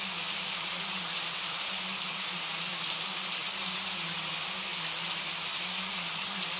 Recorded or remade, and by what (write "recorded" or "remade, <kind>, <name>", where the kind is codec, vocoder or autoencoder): recorded